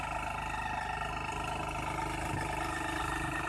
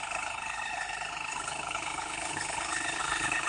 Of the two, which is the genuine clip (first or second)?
first